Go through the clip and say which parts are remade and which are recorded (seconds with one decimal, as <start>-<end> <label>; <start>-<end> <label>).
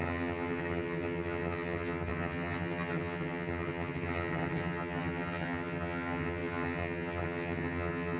0.0-8.2 remade